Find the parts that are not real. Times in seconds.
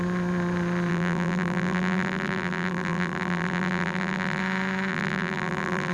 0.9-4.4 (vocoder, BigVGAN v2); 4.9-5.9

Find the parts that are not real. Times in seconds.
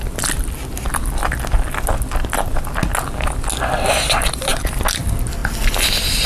none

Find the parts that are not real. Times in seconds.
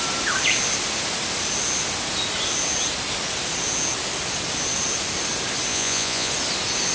5.7-6.3 (vocoder, Vocos)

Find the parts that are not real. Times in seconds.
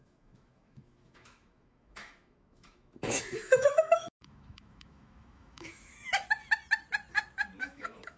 0.0-6.1 (autoencoder, DAC-VAE); 7.6-8.2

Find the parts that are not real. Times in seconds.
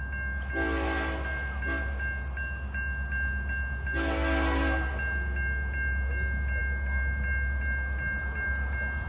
none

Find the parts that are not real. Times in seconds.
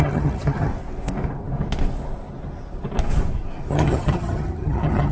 0.0-0.7 (vocoder, HiFi-GAN); 3.7-5.1